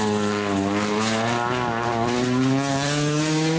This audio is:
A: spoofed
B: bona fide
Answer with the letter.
B